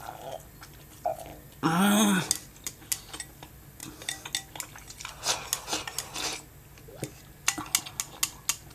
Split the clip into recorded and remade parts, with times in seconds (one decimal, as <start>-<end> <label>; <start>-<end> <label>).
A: 0.0-8.7 recorded